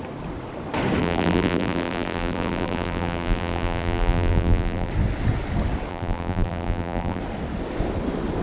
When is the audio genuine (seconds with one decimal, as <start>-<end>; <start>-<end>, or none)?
0.0-1.0; 4.9-5.9; 7.2-8.4